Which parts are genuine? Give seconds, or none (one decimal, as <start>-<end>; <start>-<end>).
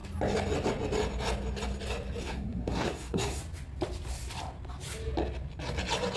0.0-2.2; 3.4-6.2